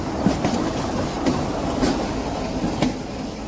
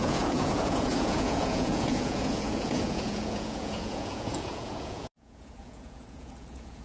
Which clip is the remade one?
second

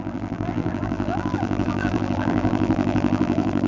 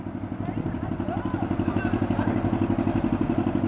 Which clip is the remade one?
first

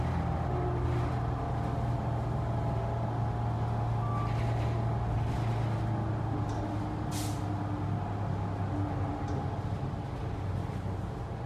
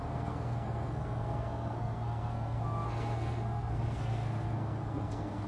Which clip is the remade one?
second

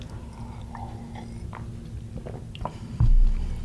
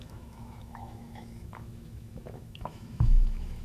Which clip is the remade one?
second